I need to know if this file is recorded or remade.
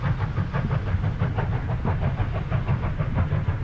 recorded